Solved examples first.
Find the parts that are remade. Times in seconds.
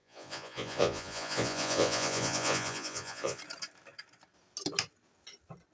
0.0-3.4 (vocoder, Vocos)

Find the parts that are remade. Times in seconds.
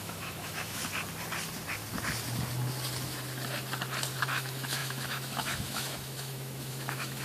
0.0-0.8 (autoencoder, DAC-VAE); 4.2-7.2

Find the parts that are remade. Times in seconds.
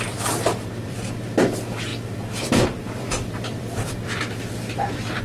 0.0-5.2 (vocoder, BigVGAN v2)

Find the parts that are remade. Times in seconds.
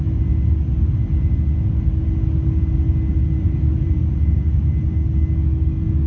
0.7-1.3 (vocoder, BigVGAN v2); 3.1-5.0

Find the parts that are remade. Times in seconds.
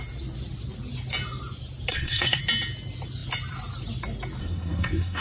1.9-2.4 (codec, SNAC); 4.4-5.2